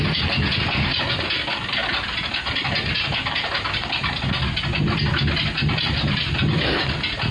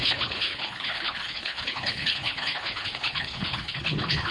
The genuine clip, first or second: first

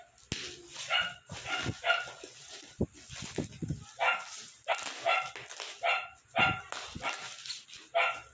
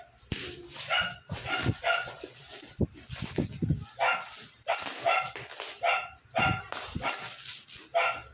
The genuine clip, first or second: first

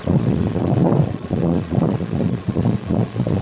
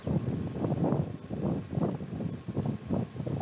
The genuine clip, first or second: second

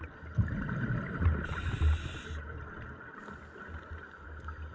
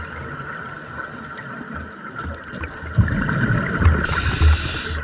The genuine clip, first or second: first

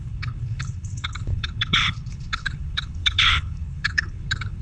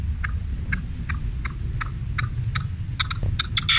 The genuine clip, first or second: second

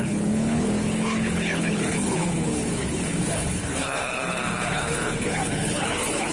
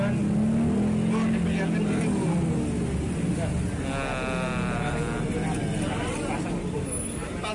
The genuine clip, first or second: second